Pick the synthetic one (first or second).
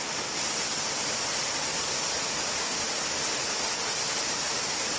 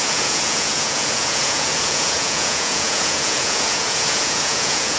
second